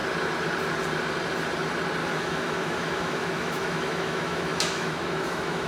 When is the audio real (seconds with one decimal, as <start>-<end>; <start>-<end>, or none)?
0.0-2.0